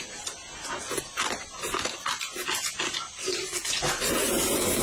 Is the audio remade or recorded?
recorded